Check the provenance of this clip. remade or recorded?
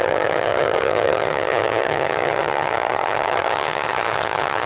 remade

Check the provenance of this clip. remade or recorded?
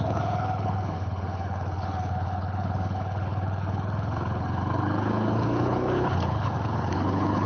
remade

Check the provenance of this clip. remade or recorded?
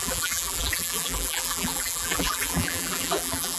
remade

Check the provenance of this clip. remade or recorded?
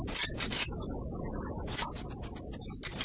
recorded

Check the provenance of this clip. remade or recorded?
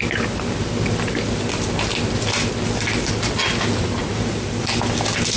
recorded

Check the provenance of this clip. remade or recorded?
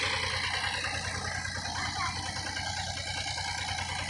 recorded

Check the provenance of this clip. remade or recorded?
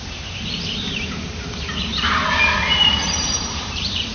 remade